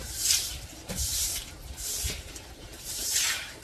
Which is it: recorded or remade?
remade